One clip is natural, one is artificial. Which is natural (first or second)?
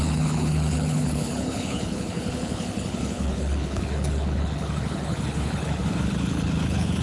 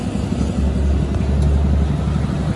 second